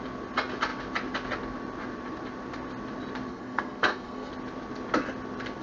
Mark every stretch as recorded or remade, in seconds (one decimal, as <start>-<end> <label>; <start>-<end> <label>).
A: 0.0-3.3 recorded; 3.3-4.3 remade; 4.3-5.6 recorded